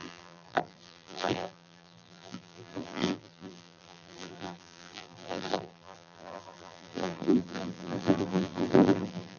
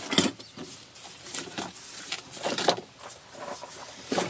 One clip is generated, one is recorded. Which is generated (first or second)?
first